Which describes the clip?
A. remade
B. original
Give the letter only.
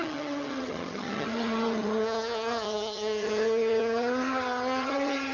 A